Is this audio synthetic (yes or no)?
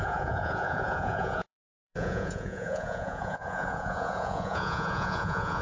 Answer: yes